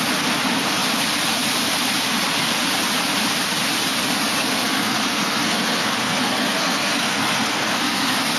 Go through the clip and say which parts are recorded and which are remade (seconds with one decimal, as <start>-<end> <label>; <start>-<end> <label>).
0.0-4.4 recorded; 4.4-8.4 remade